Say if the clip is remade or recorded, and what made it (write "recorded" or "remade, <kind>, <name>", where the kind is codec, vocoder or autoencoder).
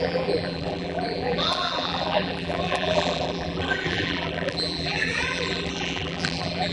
remade, vocoder, BigVGAN v2